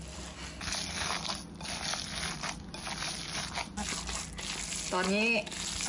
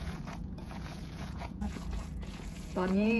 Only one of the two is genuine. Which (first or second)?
first